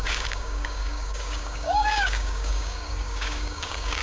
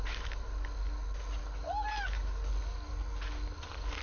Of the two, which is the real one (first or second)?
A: second